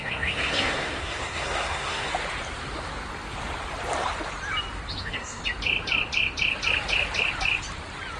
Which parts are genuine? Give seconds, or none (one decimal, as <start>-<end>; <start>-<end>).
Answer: 2.1-5.0; 5.4-8.2